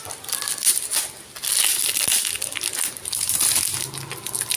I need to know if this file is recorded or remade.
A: recorded